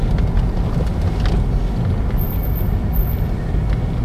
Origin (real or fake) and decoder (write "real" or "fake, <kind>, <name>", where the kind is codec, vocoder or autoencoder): real